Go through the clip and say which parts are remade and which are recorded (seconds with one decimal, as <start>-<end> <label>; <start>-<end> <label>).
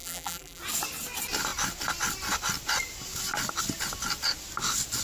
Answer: 0.0-0.6 remade; 0.6-5.0 recorded